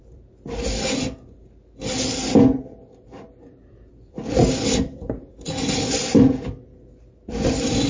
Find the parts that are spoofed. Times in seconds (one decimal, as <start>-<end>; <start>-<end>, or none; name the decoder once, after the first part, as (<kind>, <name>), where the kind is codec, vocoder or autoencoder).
3.1-7.9 (vocoder, BigVGAN v2)